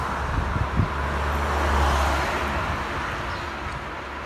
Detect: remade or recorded recorded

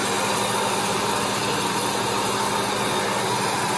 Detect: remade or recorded recorded